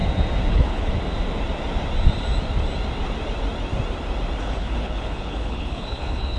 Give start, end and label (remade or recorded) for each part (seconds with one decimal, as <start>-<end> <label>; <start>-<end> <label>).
0.0-0.5 recorded; 0.5-0.9 remade; 0.9-4.4 recorded; 4.4-6.4 remade